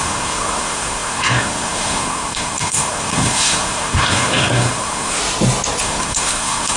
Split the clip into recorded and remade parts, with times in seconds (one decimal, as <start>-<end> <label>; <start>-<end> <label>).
0.0-5.2 remade; 5.2-5.8 recorded; 5.8-6.8 remade